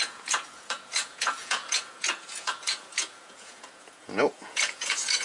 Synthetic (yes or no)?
yes